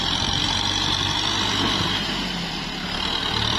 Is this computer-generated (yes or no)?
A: no